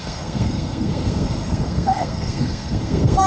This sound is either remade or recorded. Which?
remade